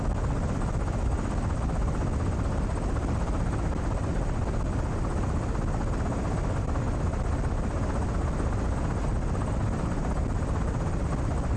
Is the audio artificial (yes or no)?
no